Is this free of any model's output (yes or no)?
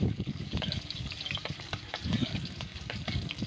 no